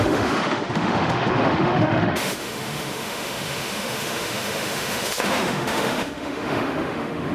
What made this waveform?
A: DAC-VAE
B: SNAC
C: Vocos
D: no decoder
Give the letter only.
A